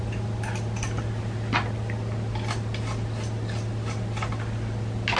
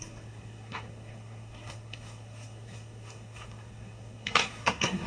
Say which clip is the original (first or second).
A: first